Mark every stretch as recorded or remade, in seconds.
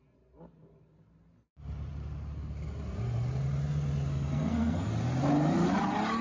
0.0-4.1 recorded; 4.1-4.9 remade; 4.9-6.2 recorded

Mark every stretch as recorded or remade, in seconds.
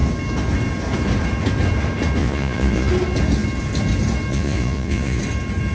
0.0-2.2 recorded; 2.2-2.9 remade; 2.9-4.3 recorded; 4.3-5.2 remade; 5.2-5.7 recorded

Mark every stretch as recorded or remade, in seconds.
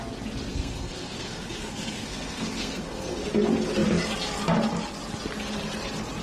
0.0-0.5 recorded; 0.5-3.3 remade; 3.3-6.2 recorded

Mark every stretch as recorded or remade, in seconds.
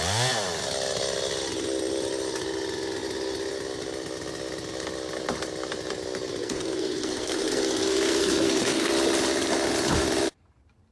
0.0-6.4 recorded; 6.4-8.9 remade; 8.9-10.9 recorded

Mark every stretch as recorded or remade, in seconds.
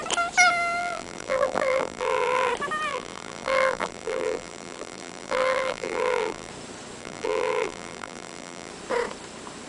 0.0-0.8 recorded; 0.8-2.5 remade; 2.5-2.9 recorded; 2.9-6.5 remade; 6.5-7.0 recorded; 7.0-8.7 remade; 8.7-9.7 recorded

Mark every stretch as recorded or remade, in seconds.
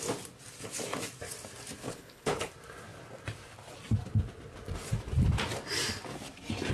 0.0-1.8 recorded; 1.8-2.5 remade; 2.5-6.7 recorded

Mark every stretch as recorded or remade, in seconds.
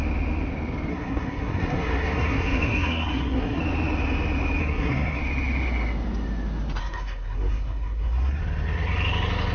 0.0-0.9 recorded; 0.9-3.6 remade; 3.6-4.6 recorded; 4.6-5.2 remade; 5.2-6.8 recorded; 6.8-8.4 remade; 8.4-9.5 recorded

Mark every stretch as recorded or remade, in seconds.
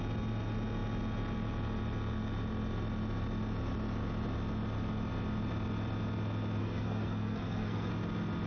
0.0-6.6 recorded; 6.6-7.9 remade; 7.9-8.5 recorded